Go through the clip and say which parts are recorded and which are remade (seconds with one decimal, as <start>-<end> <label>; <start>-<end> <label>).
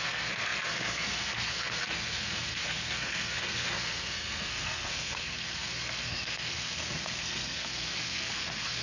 0.0-8.8 remade